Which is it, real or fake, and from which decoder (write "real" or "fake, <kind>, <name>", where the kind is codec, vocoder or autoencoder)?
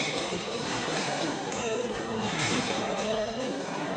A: fake, codec, SNAC